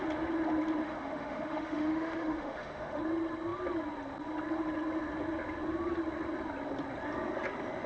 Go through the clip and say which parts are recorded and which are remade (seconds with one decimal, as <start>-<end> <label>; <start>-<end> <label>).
0.0-0.8 recorded; 0.8-3.0 remade; 3.0-7.9 recorded